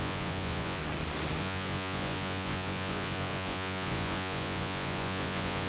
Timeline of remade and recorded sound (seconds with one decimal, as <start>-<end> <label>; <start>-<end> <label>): 0.0-0.8 remade; 0.8-1.4 recorded; 1.4-5.7 remade